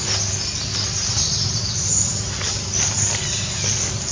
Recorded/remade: recorded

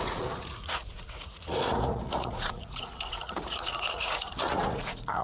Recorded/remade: remade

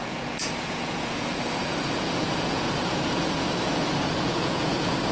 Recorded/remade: remade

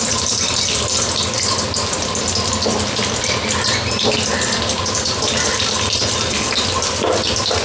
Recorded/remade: recorded